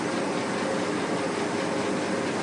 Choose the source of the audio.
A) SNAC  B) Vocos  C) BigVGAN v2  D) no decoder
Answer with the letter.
D